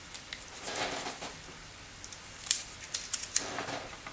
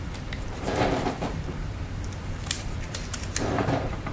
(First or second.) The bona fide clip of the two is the first